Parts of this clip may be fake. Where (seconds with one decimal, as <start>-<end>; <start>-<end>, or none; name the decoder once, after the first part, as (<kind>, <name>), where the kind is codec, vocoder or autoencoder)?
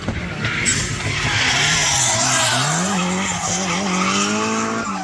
none